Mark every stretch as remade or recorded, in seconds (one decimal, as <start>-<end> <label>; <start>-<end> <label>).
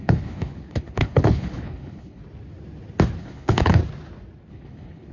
0.0-2.2 remade; 2.2-3.2 recorded; 3.2-3.8 remade; 3.8-4.5 recorded; 4.5-5.1 remade